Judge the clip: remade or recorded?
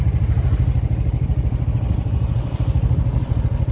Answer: recorded